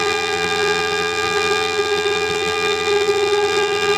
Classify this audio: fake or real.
fake